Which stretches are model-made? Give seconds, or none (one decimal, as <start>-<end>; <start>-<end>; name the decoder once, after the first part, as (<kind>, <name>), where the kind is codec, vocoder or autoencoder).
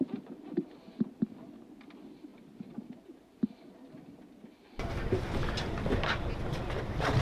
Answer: none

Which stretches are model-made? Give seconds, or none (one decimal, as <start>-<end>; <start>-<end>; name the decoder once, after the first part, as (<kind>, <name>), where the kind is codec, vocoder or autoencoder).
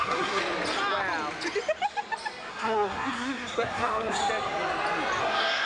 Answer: 0.0-0.4 (codec, SNAC); 2.5-4.2; 5.2-5.7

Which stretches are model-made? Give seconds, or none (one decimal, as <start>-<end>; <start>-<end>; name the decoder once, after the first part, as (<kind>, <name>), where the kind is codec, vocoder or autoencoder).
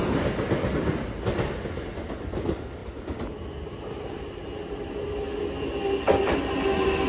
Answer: none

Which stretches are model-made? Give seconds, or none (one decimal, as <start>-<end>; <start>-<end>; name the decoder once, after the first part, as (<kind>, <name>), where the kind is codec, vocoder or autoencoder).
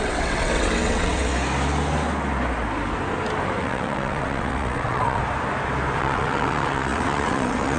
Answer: 0.0-1.3 (vocoder, WaveNeXt); 3.6-5.2; 6.0-7.8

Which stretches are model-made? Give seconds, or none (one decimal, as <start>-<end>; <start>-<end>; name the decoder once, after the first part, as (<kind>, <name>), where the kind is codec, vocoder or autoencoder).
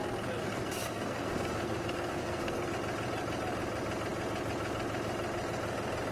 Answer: 0.4-2.7 (codec, SNAC)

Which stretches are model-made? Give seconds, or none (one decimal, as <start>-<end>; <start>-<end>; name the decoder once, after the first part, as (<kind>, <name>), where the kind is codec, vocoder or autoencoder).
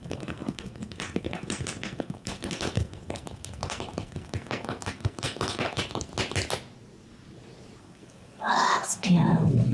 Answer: 0.0-6.1 (codec, SNAC); 7.8-9.7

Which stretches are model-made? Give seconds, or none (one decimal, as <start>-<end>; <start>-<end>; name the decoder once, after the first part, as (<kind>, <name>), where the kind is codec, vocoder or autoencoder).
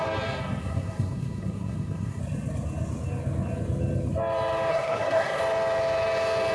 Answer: 0.6-2.2 (codec, SNAC); 4.7-5.4